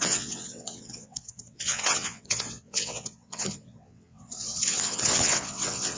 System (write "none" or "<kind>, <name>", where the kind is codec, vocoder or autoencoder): vocoder, WaveNeXt